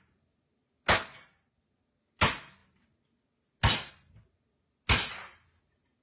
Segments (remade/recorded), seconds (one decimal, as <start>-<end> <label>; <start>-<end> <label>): 0.0-6.0 recorded